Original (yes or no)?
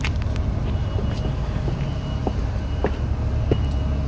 yes